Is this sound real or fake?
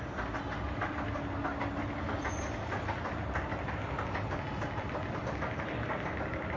real